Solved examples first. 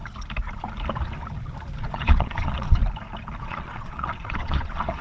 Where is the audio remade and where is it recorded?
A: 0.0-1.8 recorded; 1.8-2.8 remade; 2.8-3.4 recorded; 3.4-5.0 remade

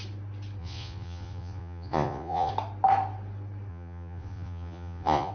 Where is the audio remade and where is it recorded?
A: 0.0-0.6 recorded; 0.6-2.5 remade; 2.5-3.7 recorded; 3.7-5.3 remade

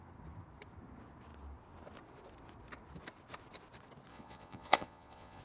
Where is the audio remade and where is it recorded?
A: 0.0-4.1 recorded; 4.1-5.4 remade

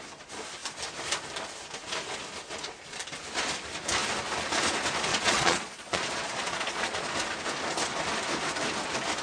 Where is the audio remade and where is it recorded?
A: 0.0-5.1 recorded; 5.1-7.1 remade; 7.1-9.2 recorded